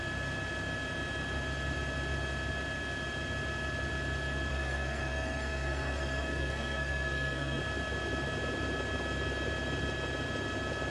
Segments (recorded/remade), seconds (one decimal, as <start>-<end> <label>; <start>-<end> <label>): 0.0-4.5 recorded; 4.5-7.6 remade; 7.6-10.9 recorded